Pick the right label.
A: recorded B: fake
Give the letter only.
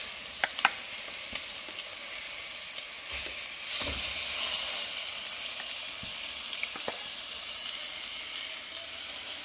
A